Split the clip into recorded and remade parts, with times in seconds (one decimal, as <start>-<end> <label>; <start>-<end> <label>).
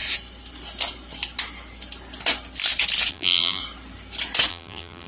0.0-3.1 recorded; 3.1-3.6 remade; 3.6-4.5 recorded; 4.5-5.1 remade